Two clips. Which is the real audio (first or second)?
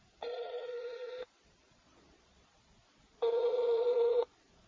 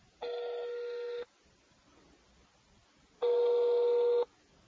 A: second